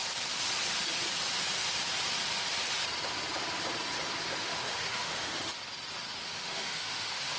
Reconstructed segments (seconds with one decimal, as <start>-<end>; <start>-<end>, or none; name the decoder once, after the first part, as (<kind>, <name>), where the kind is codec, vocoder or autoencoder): 4.4-5.6 (autoencoder, DAC-VAE); 6.1-7.4